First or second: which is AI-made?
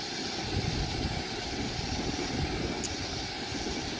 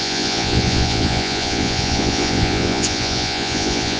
second